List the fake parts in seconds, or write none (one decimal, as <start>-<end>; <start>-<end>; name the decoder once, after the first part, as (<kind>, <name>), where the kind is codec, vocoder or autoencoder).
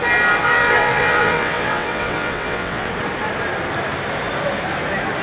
0.4-2.9 (vocoder, WaveNeXt)